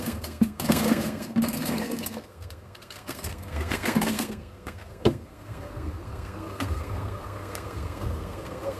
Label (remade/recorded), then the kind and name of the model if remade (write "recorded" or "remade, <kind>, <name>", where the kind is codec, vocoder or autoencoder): remade, codec, SNAC